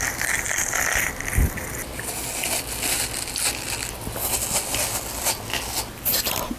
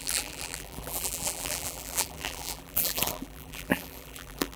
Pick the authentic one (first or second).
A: first